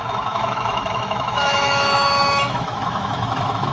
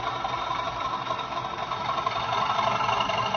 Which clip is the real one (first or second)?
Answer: second